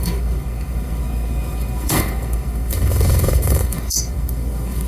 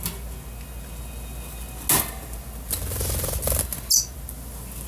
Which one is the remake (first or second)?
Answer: first